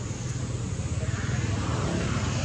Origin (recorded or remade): recorded